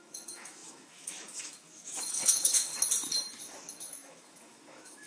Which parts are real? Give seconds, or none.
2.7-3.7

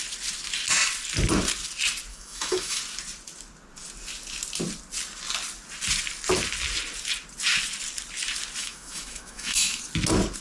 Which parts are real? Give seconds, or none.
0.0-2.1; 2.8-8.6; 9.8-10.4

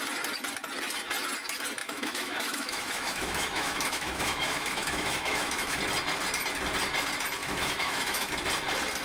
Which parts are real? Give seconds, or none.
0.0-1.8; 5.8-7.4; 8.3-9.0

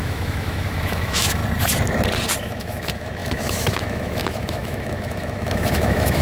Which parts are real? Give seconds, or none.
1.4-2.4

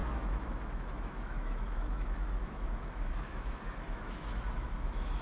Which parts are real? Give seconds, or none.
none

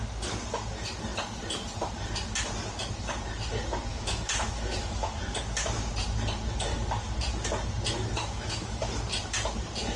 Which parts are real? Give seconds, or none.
0.0-3.9; 5.2-8.2; 8.9-10.0